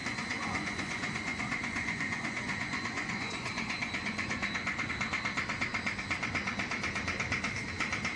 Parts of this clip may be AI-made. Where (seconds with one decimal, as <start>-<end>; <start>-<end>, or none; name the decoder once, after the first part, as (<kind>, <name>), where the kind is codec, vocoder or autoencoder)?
0.0-4.9 (vocoder, Vocos)

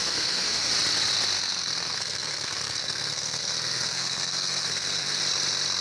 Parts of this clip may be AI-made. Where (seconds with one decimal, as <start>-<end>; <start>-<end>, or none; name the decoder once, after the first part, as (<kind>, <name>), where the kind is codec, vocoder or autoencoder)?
0.0-0.7 (codec, SNAC); 1.4-5.2

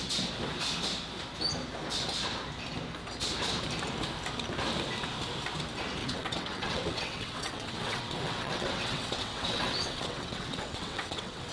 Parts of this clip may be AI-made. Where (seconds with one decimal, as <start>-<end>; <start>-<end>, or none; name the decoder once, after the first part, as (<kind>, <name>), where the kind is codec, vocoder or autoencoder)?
6.0-11.5 (vocoder, WaveNeXt)

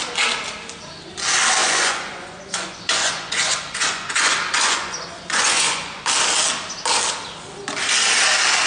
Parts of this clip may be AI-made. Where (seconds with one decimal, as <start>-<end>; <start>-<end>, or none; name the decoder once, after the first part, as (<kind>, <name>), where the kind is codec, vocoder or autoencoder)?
1.6-6.1 (vocoder, Vocos)

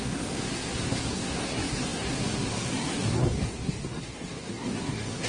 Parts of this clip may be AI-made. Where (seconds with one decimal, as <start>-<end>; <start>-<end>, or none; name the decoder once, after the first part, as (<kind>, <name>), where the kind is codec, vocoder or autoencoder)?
0.0-5.3 (codec, SNAC)

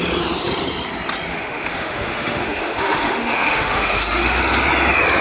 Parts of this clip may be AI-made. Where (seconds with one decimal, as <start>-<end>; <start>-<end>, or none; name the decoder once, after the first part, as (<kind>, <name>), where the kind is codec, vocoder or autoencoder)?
1.3-4.4 (autoencoder, DAC-VAE)

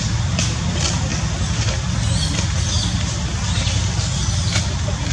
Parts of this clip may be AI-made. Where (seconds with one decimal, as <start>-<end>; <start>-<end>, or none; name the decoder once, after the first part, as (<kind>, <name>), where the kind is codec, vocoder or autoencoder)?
none

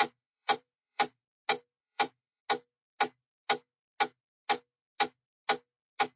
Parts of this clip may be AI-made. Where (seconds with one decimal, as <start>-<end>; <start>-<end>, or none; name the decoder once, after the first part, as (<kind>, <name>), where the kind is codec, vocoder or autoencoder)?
0.0-1.2 (vocoder, BigVGAN v2); 1.8-2.4